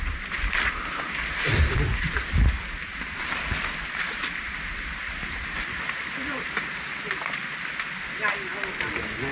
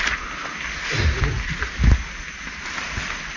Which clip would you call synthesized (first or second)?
first